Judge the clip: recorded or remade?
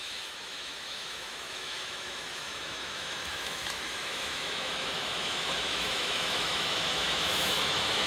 remade